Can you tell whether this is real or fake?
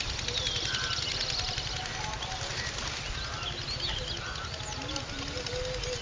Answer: real